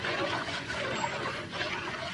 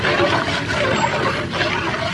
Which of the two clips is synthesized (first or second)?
first